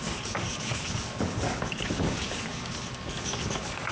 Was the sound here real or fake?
fake